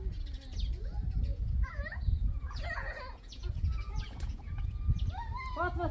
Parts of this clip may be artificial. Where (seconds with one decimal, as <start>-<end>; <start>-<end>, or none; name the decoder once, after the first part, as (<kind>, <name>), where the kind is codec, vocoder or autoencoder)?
1.3-4.8 (vocoder, Vocos)